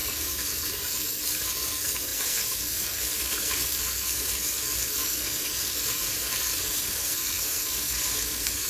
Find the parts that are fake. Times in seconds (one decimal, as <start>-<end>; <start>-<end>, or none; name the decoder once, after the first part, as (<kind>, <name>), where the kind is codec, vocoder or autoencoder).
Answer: 0.0-8.7 (codec, SNAC)